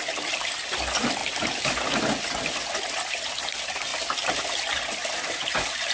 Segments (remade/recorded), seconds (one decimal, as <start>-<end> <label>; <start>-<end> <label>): 0.0-5.9 recorded

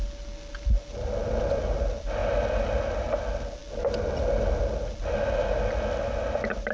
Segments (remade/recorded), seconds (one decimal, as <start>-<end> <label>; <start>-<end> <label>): 0.0-6.7 recorded

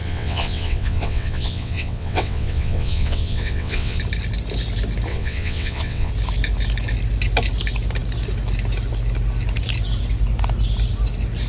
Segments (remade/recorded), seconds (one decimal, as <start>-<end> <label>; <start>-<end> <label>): 0.0-4.0 remade; 4.0-5.1 recorded; 5.1-6.1 remade; 6.1-11.5 recorded